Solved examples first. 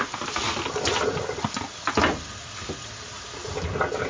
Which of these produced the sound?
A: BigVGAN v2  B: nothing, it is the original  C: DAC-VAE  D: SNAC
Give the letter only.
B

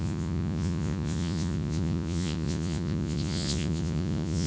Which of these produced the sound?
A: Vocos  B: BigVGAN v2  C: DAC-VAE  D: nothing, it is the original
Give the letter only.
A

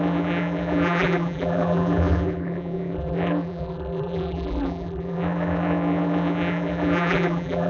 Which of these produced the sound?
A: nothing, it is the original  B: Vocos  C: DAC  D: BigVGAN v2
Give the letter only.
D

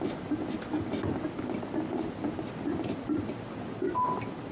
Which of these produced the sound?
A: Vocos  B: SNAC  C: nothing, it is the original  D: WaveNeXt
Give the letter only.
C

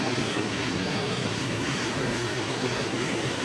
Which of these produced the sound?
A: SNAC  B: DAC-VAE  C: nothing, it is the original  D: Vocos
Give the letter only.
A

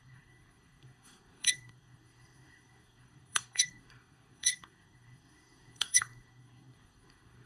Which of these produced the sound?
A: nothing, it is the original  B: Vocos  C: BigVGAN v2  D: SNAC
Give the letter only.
D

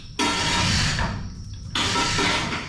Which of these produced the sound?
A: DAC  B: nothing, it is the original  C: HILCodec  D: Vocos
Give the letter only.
B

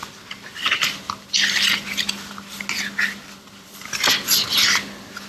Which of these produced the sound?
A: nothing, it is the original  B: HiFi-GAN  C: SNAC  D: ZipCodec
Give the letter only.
A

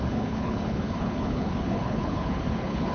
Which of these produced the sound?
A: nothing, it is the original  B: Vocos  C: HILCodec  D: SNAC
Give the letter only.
C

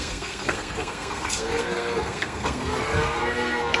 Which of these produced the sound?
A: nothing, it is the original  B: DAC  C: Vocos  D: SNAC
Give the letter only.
D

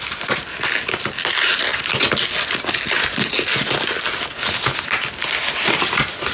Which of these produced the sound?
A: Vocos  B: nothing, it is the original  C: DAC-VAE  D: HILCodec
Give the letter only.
B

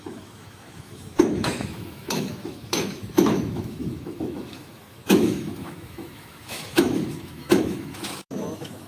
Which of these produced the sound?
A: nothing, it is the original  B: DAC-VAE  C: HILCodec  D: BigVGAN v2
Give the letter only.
B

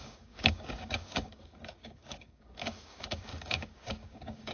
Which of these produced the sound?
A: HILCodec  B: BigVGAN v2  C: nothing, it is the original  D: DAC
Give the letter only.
D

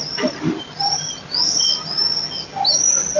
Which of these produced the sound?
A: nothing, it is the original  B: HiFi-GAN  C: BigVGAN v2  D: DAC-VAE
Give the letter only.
A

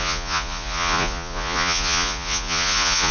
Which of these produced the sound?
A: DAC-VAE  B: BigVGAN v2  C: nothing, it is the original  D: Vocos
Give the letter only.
D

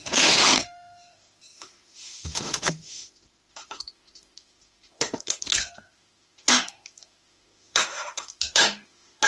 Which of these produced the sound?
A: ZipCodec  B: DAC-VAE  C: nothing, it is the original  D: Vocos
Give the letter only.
B